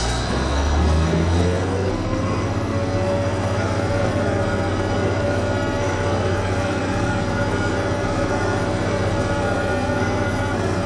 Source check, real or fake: fake